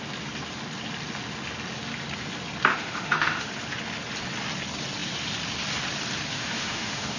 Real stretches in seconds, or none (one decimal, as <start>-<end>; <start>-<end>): 0.0-2.7; 3.5-6.3